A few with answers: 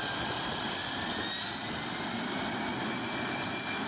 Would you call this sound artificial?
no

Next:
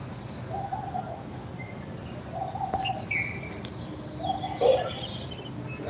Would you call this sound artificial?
no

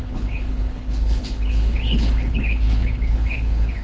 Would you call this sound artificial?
yes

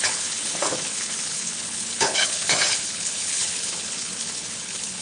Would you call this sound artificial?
yes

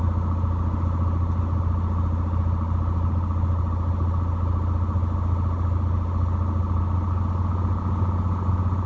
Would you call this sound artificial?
no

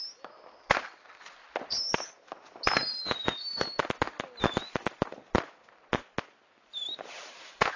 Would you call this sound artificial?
no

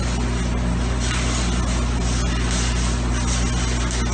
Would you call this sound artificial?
no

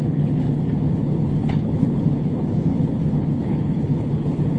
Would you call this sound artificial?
yes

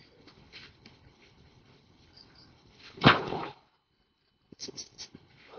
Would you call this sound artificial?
yes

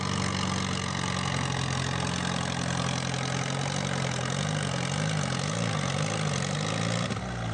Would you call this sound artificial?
no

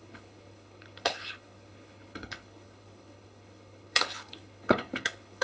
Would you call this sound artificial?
yes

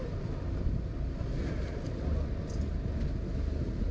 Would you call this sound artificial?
no